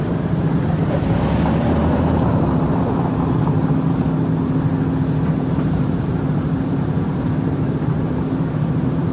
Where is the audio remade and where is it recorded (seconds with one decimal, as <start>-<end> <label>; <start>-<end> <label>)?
0.0-4.7 remade; 4.7-5.3 recorded; 5.3-9.1 remade